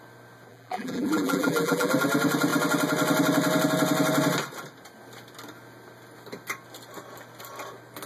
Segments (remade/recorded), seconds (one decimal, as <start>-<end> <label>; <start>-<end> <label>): 0.0-0.5 recorded; 0.5-1.9 remade; 1.9-8.1 recorded